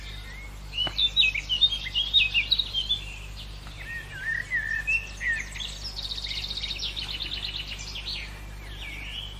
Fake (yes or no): no